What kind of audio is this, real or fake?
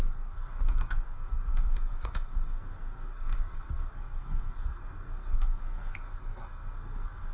fake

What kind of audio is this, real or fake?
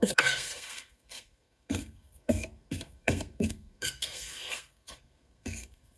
fake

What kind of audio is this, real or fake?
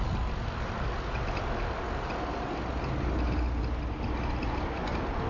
real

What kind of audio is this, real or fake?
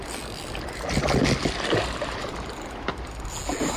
real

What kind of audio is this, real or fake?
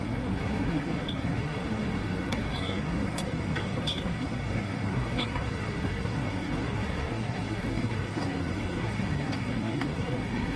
fake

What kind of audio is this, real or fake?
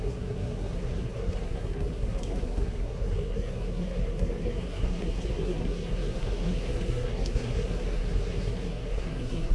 fake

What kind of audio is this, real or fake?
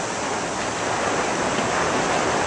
real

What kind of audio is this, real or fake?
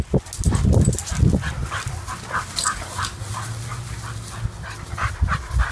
real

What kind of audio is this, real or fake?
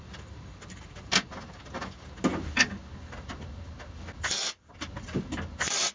real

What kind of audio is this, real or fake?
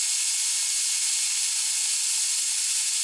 real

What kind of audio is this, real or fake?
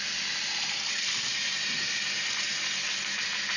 real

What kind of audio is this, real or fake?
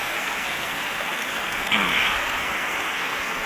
fake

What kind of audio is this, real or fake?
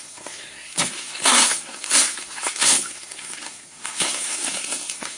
fake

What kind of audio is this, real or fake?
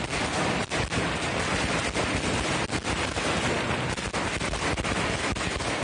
real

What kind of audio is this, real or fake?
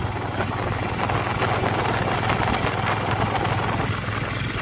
real